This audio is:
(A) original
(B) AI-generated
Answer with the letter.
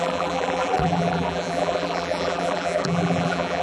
B